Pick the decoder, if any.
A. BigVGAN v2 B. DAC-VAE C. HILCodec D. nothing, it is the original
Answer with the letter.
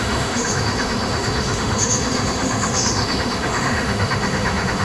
B